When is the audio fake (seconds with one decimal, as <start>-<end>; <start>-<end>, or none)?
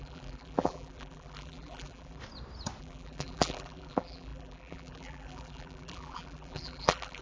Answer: 0.0-2.2; 2.8-7.2